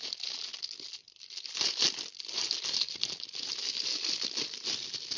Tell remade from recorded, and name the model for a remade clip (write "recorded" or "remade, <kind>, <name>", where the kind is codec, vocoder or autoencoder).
recorded